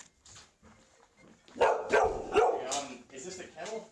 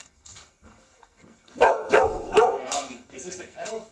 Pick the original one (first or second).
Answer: first